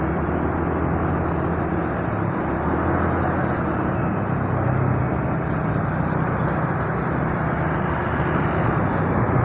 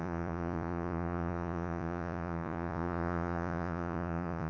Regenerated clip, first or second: second